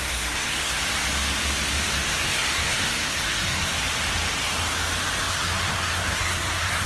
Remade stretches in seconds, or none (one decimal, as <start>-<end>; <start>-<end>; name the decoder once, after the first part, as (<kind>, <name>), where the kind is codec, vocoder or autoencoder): 0.0-0.8 (codec, SNAC); 1.9-3.7; 5.3-6.9